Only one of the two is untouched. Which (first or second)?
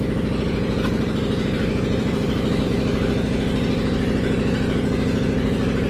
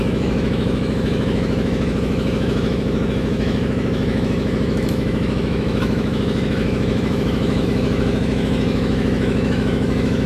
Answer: first